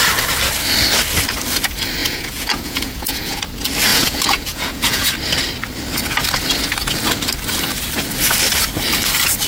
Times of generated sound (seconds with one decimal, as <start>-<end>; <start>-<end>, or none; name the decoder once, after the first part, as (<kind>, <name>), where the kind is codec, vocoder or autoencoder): 2.0-3.4 (vocoder, Vocos); 3.9-5.1